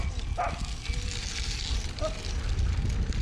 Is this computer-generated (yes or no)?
no